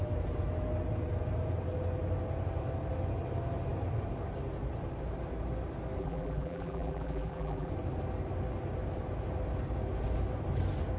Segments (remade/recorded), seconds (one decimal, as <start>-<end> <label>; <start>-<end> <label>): 0.0-6.0 recorded; 6.0-7.7 remade; 7.7-11.0 recorded

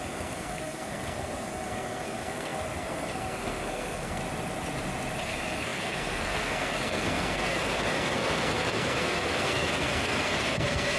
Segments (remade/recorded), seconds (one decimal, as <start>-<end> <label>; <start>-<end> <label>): 0.0-4.2 remade; 4.2-5.2 recorded; 5.2-11.0 remade

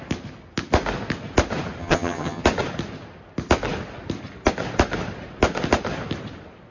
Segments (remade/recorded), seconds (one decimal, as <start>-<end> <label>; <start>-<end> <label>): 0.0-1.8 recorded; 1.8-2.4 remade; 2.4-6.7 recorded

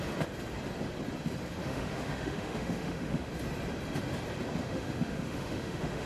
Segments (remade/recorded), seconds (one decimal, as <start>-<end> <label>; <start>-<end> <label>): 0.0-1.6 recorded; 1.6-3.3 remade; 3.3-4.6 recorded; 4.6-6.1 remade

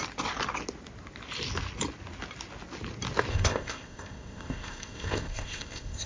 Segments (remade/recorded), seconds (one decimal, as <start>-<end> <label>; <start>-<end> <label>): 0.0-3.3 recorded; 3.3-6.1 remade

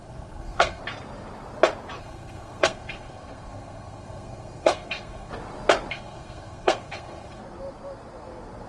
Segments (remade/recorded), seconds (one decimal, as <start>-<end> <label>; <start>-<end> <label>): 0.0-0.8 remade; 0.8-2.0 recorded; 2.0-5.3 remade; 5.3-5.9 recorded; 5.9-7.4 remade; 7.4-8.7 recorded